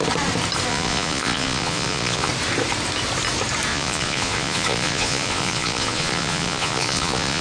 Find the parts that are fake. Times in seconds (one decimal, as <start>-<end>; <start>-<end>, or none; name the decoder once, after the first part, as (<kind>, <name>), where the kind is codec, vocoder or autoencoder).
0.7-2.3 (vocoder, Vocos); 3.7-7.4